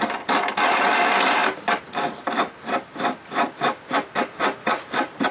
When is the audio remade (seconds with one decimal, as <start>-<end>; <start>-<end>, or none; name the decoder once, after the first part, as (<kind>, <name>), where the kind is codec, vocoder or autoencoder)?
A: none